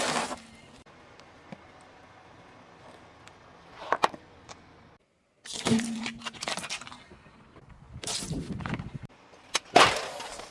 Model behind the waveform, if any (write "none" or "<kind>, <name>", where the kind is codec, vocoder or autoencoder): none